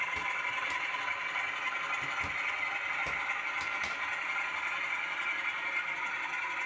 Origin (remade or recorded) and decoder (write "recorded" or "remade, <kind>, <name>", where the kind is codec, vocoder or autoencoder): recorded